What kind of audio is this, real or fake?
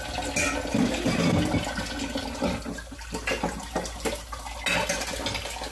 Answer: real